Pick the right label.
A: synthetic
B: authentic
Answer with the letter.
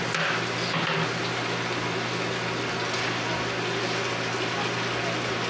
B